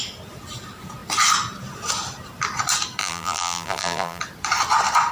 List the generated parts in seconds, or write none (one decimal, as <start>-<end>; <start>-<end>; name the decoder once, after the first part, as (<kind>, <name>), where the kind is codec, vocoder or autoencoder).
3.0-4.2 (vocoder, BigVGAN v2)